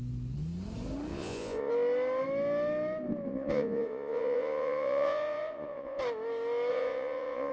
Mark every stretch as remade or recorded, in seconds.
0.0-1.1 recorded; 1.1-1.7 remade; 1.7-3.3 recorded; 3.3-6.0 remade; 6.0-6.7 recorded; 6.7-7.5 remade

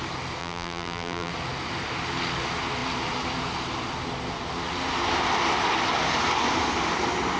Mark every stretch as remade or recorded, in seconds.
0.0-0.4 recorded; 0.4-1.3 remade; 1.3-7.4 recorded

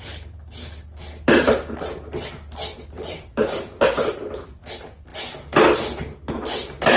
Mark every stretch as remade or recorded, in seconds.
0.0-2.7 recorded; 2.7-4.3 remade; 4.3-7.0 recorded

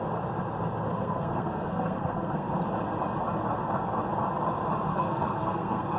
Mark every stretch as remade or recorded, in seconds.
0.0-0.9 recorded; 0.9-2.5 remade; 2.5-4.9 recorded; 4.9-6.0 remade

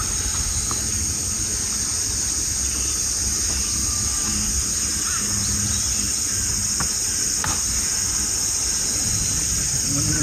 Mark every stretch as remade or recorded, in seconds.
0.0-10.2 recorded